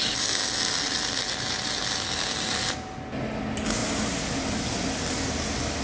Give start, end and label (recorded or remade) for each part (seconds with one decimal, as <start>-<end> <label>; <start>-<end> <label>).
0.0-5.8 recorded